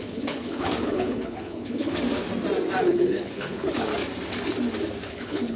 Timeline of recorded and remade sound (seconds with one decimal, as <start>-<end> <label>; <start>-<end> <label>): 0.0-1.9 remade; 1.9-2.8 recorded; 2.8-3.9 remade; 3.9-5.1 recorded; 5.1-5.6 remade